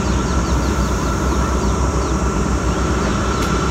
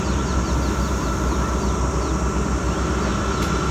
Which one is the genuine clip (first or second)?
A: second